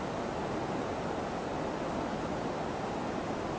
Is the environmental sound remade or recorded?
recorded